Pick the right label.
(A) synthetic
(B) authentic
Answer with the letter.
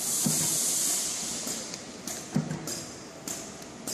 B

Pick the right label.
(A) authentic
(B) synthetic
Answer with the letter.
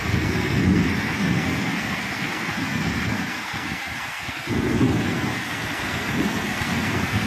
B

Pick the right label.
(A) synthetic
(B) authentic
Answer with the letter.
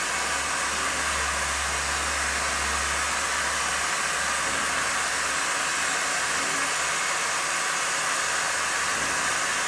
B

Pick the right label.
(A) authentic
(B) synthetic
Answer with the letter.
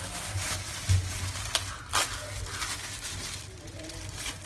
A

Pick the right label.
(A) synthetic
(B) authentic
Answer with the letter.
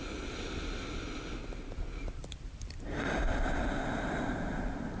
A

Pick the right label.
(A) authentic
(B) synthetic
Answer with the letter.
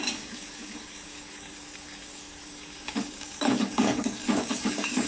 B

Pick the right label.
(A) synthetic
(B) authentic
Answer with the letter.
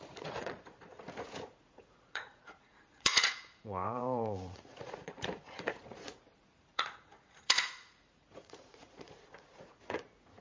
A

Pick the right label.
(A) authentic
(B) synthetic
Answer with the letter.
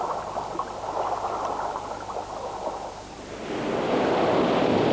A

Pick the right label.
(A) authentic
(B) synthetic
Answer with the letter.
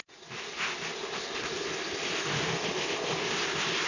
A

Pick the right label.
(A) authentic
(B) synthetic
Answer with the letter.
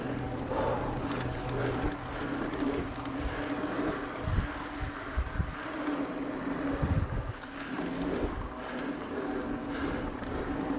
A